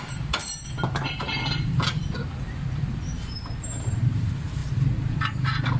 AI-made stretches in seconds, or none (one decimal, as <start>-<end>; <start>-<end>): 0.0-5.8